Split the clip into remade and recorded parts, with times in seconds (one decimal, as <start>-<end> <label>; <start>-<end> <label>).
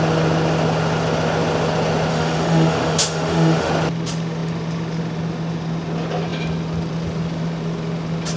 0.0-2.1 recorded; 2.1-3.7 remade; 3.7-8.4 recorded